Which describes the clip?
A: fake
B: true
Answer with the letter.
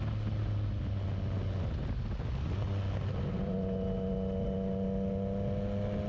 B